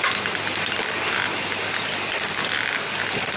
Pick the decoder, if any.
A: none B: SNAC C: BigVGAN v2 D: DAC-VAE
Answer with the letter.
A